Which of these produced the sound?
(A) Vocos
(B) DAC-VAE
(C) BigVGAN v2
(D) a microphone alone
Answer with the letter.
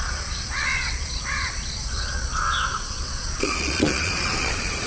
A